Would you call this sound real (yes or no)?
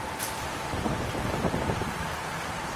no